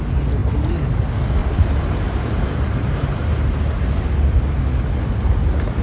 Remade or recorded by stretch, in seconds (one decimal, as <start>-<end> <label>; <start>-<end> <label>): 0.0-0.4 recorded; 0.4-0.9 remade; 0.9-1.4 recorded; 1.4-3.3 remade; 3.3-5.8 recorded